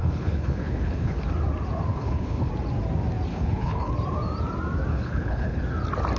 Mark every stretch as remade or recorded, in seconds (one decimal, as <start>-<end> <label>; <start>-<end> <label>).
0.0-1.2 remade; 1.2-1.9 recorded; 1.9-2.5 remade; 2.5-3.3 recorded; 3.3-3.9 remade; 3.9-4.9 recorded; 4.9-5.6 remade; 5.6-6.2 recorded